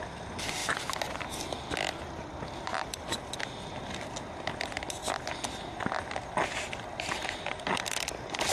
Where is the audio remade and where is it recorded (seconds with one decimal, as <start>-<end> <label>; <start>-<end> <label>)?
0.0-8.5 recorded